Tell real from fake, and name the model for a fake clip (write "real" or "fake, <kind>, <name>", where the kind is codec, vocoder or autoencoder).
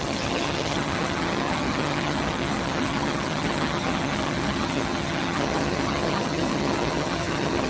fake, vocoder, HiFi-GAN